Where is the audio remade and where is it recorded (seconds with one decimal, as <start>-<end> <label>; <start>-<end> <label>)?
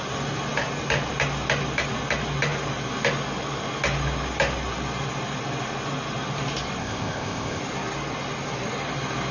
0.0-6.8 recorded; 6.8-7.6 remade; 7.6-9.3 recorded